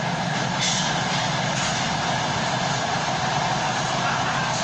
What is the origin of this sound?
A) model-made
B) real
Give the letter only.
B